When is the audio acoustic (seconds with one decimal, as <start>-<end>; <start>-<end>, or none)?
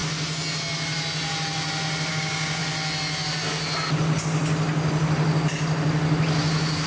0.0-2.1; 2.6-6.9